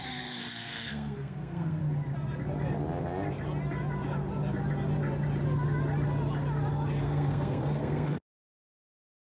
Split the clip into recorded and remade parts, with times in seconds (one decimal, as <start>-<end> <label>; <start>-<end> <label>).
0.0-1.8 remade; 1.8-7.0 recorded; 7.0-9.2 remade